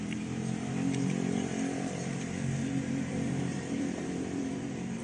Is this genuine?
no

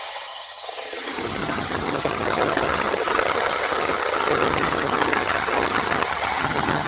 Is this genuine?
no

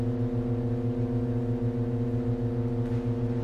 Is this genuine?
yes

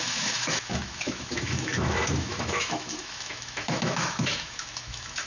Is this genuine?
no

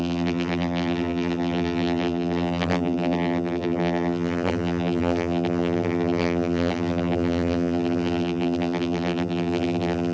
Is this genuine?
no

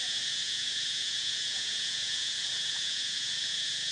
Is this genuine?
no